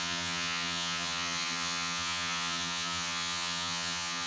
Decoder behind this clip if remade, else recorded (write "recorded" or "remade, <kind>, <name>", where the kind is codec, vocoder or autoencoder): remade, vocoder, HiFi-GAN